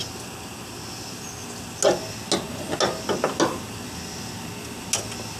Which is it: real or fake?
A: real